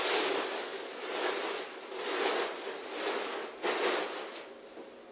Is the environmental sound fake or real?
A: real